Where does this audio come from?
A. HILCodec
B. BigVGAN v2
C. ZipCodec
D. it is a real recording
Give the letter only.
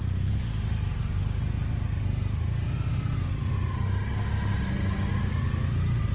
D